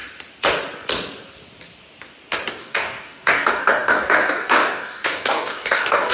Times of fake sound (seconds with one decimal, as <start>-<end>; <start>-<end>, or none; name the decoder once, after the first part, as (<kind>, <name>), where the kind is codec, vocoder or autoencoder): 2.6-6.1 (codec, DAC)